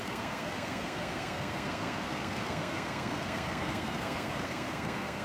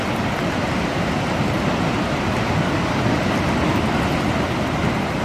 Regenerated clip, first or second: first